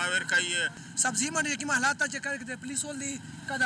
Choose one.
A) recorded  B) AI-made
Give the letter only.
A